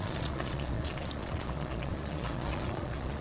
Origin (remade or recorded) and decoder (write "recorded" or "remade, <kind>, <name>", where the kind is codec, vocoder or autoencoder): remade, vocoder, Vocos